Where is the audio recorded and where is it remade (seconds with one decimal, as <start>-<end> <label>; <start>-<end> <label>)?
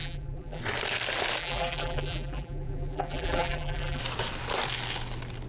0.0-0.6 remade; 0.6-1.4 recorded; 1.4-4.0 remade; 4.0-5.5 recorded